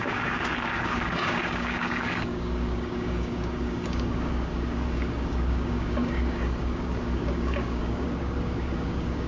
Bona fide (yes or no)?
no